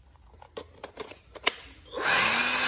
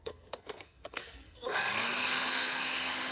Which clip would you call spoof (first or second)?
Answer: second